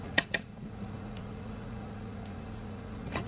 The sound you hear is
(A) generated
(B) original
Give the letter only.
A